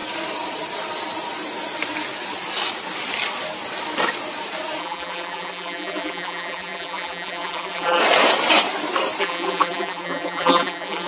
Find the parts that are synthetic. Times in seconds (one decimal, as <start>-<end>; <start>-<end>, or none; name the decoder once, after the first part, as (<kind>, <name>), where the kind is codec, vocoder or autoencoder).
4.8-8.0 (vocoder, BigVGAN v2); 9.2-11.1